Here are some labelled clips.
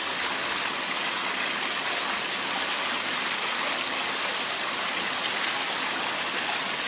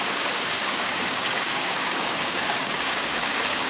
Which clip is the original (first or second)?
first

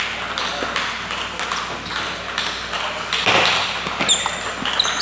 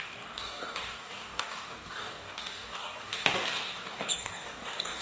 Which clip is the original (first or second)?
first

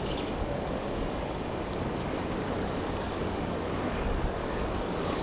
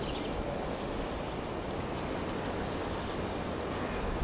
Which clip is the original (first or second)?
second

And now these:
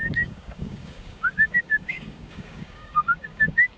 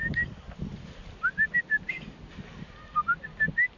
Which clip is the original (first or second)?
second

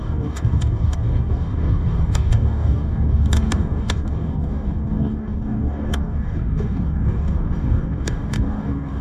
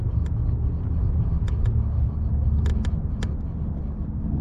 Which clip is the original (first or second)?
second